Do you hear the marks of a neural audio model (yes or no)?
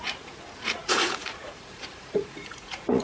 yes